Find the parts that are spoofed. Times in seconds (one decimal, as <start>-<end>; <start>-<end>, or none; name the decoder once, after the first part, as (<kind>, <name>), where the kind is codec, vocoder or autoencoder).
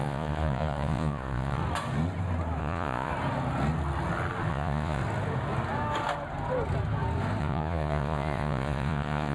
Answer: 0.0-1.6 (vocoder, Vocos); 2.6-3.1; 4.5-5.0; 7.4-9.3